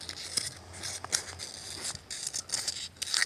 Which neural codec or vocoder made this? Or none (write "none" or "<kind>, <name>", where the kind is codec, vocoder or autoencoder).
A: none